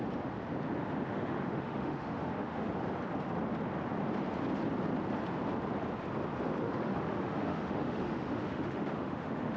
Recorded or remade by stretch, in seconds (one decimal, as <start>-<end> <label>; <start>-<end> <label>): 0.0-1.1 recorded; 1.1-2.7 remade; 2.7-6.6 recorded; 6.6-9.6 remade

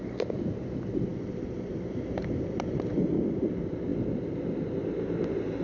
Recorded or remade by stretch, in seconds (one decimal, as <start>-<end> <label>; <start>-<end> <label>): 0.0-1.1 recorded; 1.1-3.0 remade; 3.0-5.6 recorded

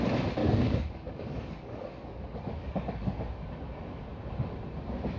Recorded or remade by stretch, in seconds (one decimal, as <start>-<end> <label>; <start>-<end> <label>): 0.0-0.4 recorded; 0.4-3.5 remade; 3.5-5.2 recorded

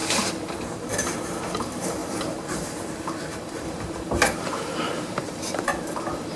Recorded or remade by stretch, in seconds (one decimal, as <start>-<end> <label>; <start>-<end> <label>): 0.0-0.6 recorded; 0.6-6.4 remade

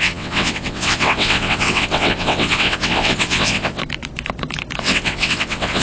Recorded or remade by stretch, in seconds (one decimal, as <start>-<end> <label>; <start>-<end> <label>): 0.0-3.8 remade; 3.8-4.8 recorded; 4.8-5.8 remade